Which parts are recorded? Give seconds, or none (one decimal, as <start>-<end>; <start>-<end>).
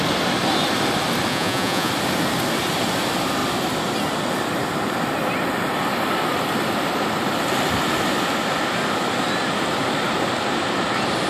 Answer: 0.0-1.3; 1.9-11.3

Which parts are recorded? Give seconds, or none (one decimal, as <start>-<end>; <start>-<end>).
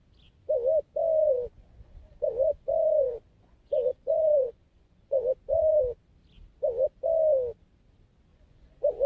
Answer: 0.0-1.2; 5.8-8.3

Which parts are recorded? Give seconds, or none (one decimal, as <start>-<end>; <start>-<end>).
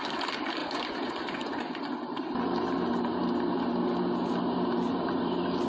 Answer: 0.0-0.6; 2.0-5.7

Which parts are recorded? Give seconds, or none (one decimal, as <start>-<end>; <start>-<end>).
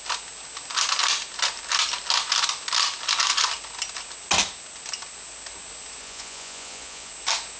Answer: 0.0-6.0; 7.1-7.6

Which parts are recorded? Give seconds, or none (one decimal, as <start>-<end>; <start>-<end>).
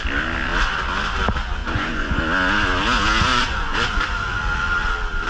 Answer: 0.0-1.6; 2.2-3.3; 4.0-5.3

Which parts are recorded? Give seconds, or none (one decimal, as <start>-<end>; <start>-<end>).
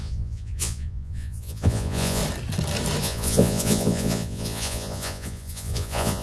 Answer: 2.2-3.0